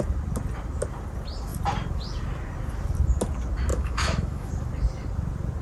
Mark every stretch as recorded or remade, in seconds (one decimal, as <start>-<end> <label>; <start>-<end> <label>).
0.0-3.7 recorded; 3.7-4.5 remade; 4.5-5.6 recorded